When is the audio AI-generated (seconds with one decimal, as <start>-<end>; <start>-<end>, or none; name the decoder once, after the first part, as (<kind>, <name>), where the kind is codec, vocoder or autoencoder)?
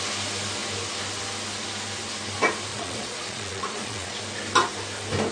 2.7-4.2 (vocoder, Vocos)